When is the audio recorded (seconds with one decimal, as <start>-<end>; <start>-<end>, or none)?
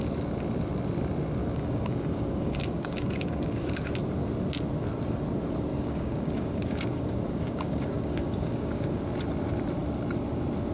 0.0-1.4; 3.9-5.7; 9.0-10.7